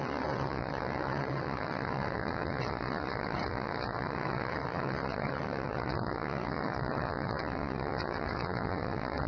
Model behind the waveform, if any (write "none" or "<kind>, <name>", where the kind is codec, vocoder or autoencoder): vocoder, WaveNeXt